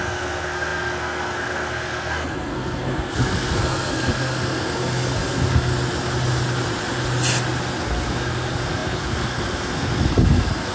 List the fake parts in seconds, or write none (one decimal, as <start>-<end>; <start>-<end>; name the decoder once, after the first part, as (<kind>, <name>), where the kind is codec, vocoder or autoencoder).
0.0-5.7 (codec, SNAC); 7.8-10.7